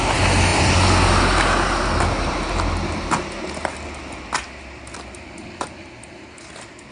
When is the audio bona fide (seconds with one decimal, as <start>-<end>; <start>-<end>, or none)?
0.0-6.9